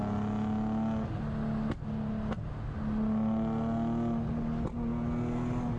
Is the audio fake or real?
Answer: real